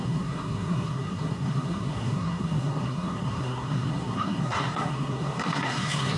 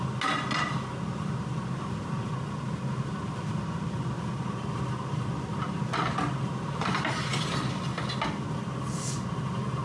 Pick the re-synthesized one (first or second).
first